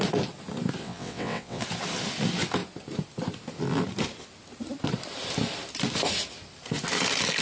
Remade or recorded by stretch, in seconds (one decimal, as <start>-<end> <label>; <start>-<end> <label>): 0.0-0.8 recorded; 0.8-1.6 remade; 1.6-7.4 recorded